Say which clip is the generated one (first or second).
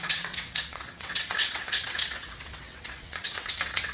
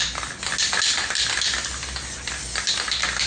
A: first